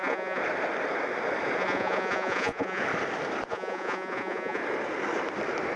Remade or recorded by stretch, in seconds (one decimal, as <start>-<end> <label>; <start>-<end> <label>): 0.0-0.4 remade; 0.4-1.6 recorded; 1.6-2.8 remade; 2.8-3.5 recorded; 3.5-4.6 remade; 4.6-5.8 recorded